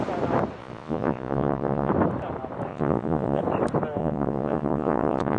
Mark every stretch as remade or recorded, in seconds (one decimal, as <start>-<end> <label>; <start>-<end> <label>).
0.0-0.6 recorded; 0.6-1.9 remade; 1.9-2.7 recorded; 2.7-3.4 remade; 3.4-4.0 recorded; 4.0-5.4 remade